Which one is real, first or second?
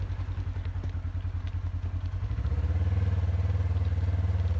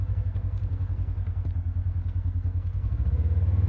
first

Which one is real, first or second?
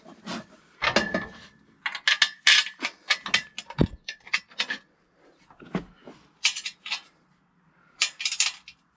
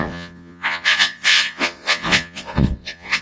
first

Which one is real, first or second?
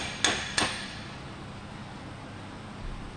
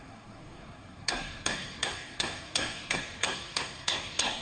first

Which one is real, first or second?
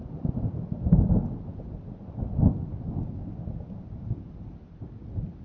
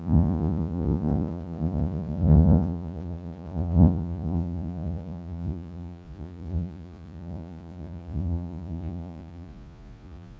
first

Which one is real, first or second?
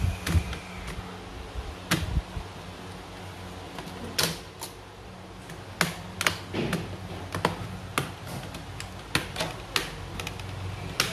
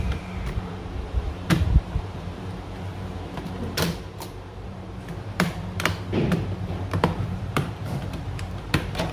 first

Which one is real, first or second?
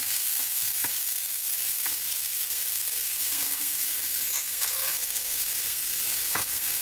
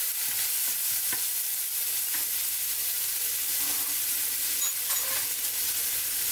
second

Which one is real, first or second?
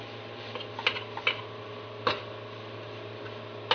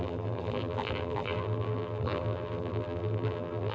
first